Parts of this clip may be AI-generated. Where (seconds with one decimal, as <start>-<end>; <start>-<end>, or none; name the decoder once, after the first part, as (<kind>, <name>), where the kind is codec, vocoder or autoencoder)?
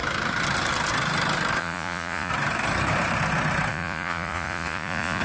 1.6-2.3 (vocoder, Vocos); 3.7-5.2